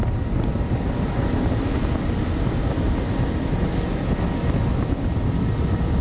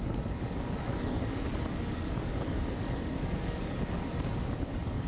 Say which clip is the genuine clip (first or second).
first